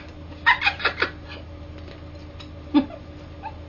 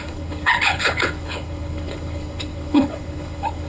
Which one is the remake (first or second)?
second